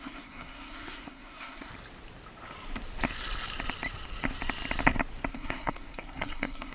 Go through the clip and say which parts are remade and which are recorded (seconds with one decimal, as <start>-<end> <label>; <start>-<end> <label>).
0.0-1.7 remade; 1.7-5.3 recorded; 5.3-6.7 remade